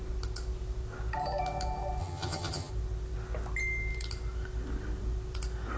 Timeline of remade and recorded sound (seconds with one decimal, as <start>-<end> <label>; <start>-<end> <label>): 0.0-2.0 recorded; 2.0-2.7 remade; 2.7-5.8 recorded